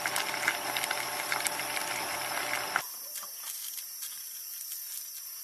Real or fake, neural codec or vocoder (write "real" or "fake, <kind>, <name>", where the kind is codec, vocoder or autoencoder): real